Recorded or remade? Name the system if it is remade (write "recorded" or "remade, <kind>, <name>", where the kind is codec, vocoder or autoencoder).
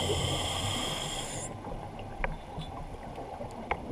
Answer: recorded